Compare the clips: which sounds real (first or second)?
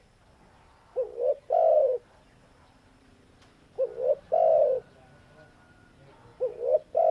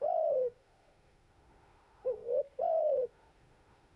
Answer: first